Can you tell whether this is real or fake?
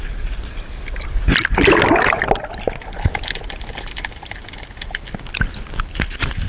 real